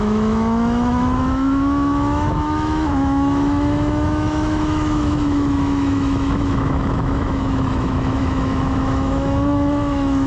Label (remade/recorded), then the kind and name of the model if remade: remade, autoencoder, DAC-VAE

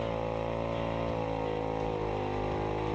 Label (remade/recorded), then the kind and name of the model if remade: recorded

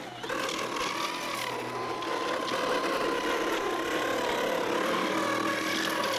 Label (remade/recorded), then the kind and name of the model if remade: recorded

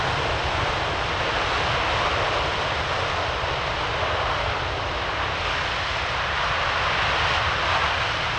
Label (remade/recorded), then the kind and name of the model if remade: recorded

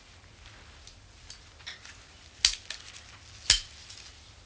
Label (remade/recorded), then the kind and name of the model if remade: recorded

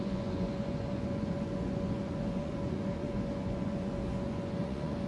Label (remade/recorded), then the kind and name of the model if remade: remade, vocoder, Vocos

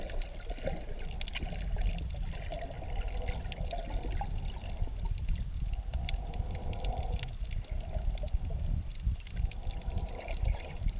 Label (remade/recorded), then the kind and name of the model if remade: recorded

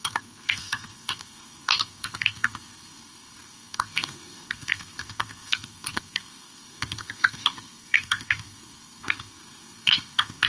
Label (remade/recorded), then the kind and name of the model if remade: remade, codec, SNAC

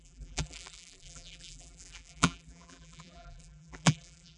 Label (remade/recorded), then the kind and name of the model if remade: remade, vocoder, BigVGAN v2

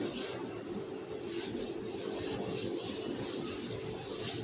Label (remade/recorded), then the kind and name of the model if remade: recorded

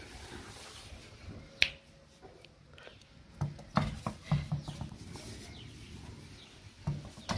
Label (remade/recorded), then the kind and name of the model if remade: recorded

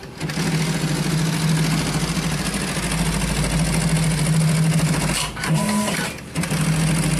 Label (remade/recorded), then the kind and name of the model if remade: recorded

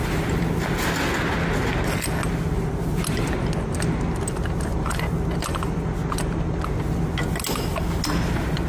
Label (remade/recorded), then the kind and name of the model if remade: recorded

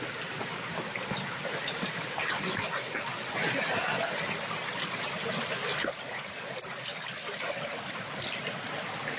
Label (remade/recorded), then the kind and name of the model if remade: recorded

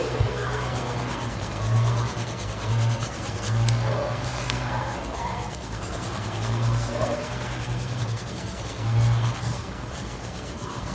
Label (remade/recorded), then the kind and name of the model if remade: remade, codec, SNAC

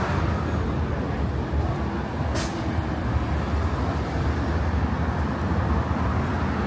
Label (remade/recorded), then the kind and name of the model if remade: recorded